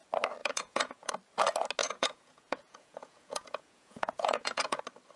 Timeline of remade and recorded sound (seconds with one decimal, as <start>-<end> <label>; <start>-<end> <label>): 0.0-0.4 recorded; 0.4-1.1 remade; 1.1-1.8 recorded; 1.8-4.8 remade; 4.8-5.2 recorded